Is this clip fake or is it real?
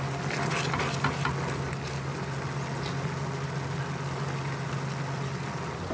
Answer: real